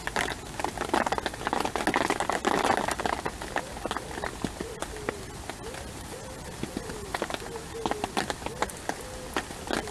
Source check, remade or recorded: recorded